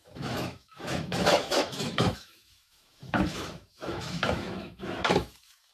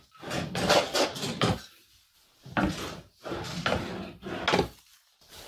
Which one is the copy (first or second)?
first